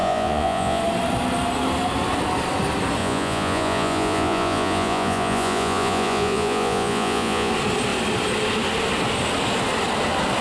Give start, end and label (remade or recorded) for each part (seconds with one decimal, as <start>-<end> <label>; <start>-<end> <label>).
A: 0.0-0.8 remade; 0.8-3.0 recorded; 3.0-7.5 remade; 7.5-10.4 recorded

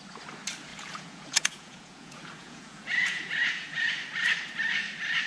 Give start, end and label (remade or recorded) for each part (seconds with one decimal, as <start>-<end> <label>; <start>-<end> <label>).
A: 0.0-0.7 recorded; 0.7-3.9 remade; 3.9-5.3 recorded